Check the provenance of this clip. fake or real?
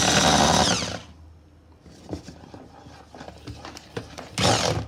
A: real